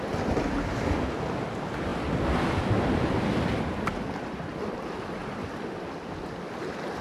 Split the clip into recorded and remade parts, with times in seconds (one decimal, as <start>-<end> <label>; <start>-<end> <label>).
0.0-7.0 recorded

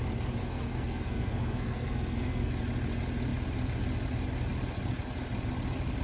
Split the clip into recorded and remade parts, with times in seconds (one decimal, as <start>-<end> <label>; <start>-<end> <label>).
0.0-0.4 recorded; 0.4-2.5 remade; 2.5-6.0 recorded